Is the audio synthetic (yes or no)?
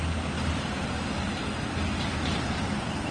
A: yes